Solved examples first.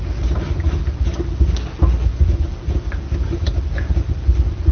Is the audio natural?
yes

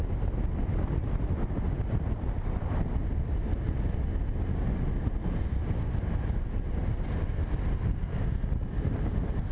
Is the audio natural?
yes